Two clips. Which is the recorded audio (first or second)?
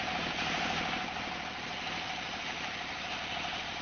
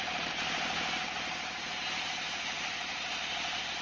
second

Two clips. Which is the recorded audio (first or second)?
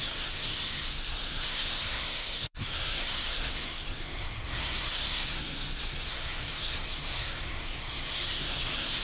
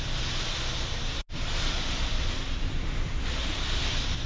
second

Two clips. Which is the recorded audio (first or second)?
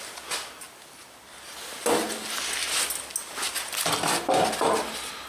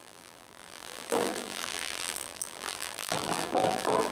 first